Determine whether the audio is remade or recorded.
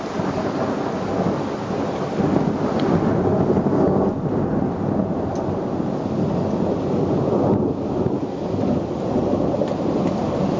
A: recorded